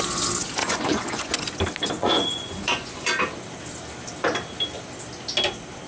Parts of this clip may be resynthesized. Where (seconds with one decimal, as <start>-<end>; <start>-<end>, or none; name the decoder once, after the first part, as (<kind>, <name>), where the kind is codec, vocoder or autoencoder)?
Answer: 0.6-1.3 (vocoder, Vocos); 2.0-3.2